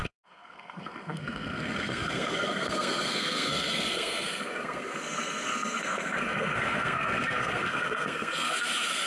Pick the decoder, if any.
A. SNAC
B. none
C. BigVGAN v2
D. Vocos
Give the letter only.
A